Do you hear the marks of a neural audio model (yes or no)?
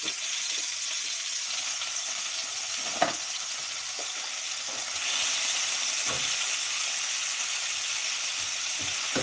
no